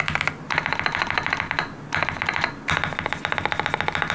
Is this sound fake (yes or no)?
no